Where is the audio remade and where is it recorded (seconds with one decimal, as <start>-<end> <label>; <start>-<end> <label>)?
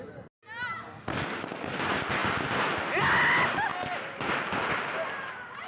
0.0-5.7 recorded